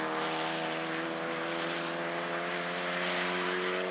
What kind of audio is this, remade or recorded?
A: recorded